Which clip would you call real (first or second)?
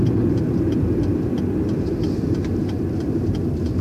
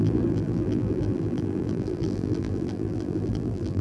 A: first